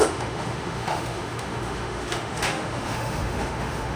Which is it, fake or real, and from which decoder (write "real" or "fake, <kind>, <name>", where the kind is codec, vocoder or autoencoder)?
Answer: fake, autoencoder, DAC-VAE